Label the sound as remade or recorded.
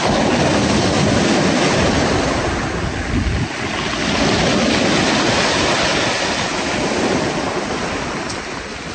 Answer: recorded